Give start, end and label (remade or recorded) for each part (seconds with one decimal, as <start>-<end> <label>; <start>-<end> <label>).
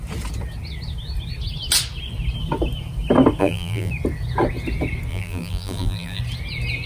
0.0-3.4 recorded; 3.4-3.9 remade; 3.9-5.1 recorded; 5.1-6.2 remade; 6.2-6.9 recorded